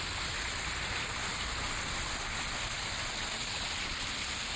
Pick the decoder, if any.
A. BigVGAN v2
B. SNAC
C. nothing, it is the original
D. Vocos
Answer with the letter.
C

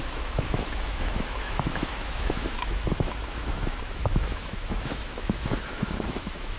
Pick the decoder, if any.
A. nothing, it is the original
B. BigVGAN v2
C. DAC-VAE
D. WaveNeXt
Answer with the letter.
C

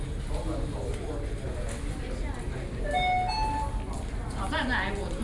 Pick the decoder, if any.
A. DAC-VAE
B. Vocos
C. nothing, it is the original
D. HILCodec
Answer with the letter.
C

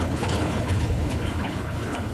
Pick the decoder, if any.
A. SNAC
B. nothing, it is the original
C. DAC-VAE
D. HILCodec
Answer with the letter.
D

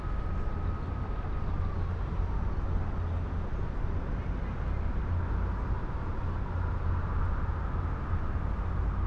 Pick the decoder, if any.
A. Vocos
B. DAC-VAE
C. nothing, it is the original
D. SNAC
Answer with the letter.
C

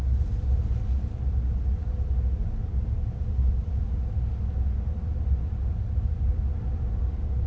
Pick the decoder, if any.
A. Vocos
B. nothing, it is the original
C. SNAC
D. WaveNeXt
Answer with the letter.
B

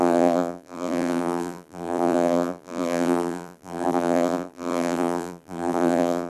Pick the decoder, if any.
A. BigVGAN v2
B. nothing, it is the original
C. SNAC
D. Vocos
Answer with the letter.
A